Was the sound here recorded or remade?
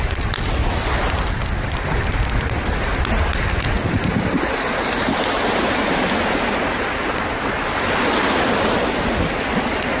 recorded